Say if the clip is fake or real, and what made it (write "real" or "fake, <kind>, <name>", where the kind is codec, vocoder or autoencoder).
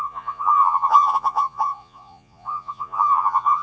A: fake, vocoder, Vocos